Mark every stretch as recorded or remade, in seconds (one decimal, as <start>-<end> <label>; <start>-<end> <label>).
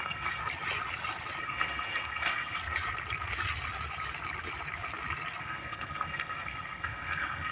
0.0-0.4 remade; 0.4-1.4 recorded; 1.4-2.6 remade; 2.6-5.4 recorded; 5.4-7.5 remade